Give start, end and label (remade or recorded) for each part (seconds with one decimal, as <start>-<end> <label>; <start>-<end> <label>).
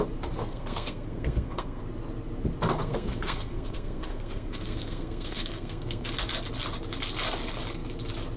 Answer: 0.0-0.4 recorded; 0.4-1.8 remade; 1.8-2.8 recorded; 2.8-6.1 remade; 6.1-8.4 recorded